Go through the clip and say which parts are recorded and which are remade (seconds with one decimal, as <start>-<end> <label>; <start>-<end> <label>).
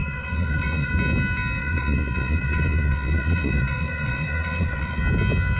0.0-0.9 remade; 0.9-1.6 recorded; 1.6-5.0 remade; 5.0-5.6 recorded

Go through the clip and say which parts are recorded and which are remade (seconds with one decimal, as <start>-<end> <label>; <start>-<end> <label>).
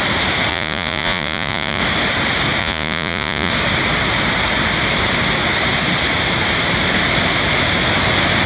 0.0-0.5 recorded; 0.5-1.8 remade; 1.8-2.6 recorded; 2.6-3.5 remade; 3.5-8.5 recorded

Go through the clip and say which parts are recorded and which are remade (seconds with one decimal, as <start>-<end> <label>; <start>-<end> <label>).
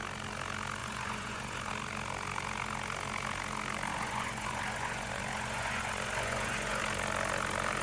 0.0-0.8 recorded; 0.8-1.7 remade; 1.7-3.9 recorded; 3.9-6.8 remade; 6.8-7.8 recorded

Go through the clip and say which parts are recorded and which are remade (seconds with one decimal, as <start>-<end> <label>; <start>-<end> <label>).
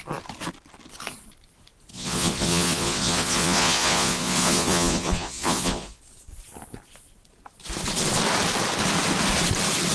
0.0-1.9 recorded; 1.9-6.0 remade; 6.0-9.9 recorded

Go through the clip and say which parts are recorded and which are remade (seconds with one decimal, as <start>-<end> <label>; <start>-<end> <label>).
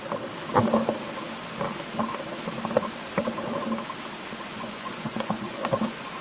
0.0-4.5 recorded; 4.5-6.2 remade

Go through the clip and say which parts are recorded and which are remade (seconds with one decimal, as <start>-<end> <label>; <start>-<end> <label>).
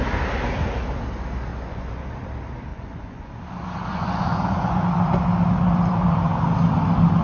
0.0-1.5 recorded; 1.5-2.0 remade; 2.0-2.7 recorded; 2.7-3.3 remade; 3.3-3.9 recorded; 3.9-4.8 remade; 4.8-7.2 recorded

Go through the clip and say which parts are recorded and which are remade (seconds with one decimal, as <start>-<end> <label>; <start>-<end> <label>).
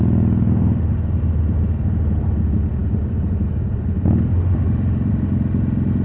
0.0-6.0 recorded